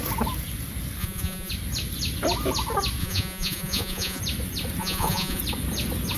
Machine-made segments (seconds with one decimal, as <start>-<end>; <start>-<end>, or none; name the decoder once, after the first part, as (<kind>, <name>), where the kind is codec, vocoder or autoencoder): 1.0-1.5 (vocoder, Vocos); 3.0-4.2; 4.8-5.4